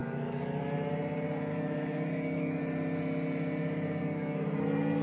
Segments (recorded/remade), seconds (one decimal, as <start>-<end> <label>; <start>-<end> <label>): 0.0-0.6 remade; 0.6-1.5 recorded; 1.5-2.6 remade; 2.6-4.0 recorded; 4.0-4.6 remade; 4.6-5.0 recorded

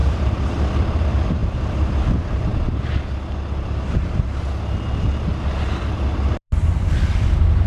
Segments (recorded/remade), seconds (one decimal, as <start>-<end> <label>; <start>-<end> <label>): 0.0-1.4 remade; 1.4-2.0 recorded; 2.0-2.5 remade; 2.5-6.4 recorded; 6.4-7.7 remade

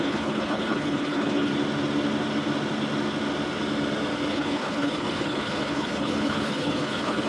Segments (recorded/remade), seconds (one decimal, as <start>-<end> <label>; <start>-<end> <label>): 0.0-1.5 remade; 1.5-4.3 recorded; 4.3-7.3 remade

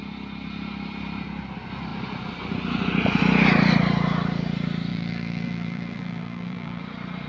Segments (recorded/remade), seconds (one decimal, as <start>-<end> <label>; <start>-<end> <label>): 0.0-4.9 recorded; 4.9-6.8 remade; 6.8-7.3 recorded

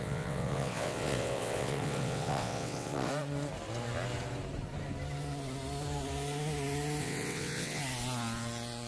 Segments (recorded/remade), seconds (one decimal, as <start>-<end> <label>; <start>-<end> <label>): 0.0-3.1 remade; 3.1-7.0 recorded; 7.0-7.8 remade; 7.8-8.9 recorded

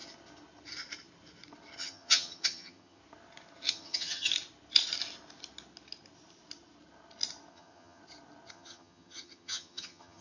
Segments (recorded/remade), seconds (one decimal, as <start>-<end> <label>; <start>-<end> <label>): 0.0-1.8 recorded; 1.8-3.0 remade; 3.0-3.7 recorded; 3.7-4.3 remade; 4.3-7.5 recorded; 7.5-8.0 remade; 8.0-8.5 recorded; 8.5-10.2 remade